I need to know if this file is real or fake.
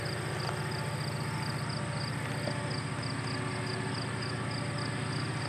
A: real